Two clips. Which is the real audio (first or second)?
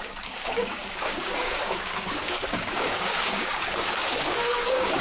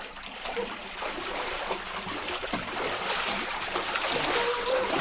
second